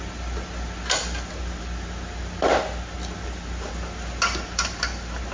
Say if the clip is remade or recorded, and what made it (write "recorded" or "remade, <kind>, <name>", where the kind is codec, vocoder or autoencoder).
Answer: recorded